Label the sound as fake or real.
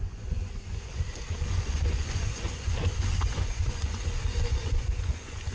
fake